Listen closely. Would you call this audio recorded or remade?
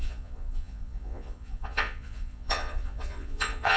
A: remade